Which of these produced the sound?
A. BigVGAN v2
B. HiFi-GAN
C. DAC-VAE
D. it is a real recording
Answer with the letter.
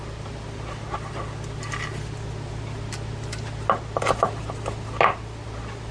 D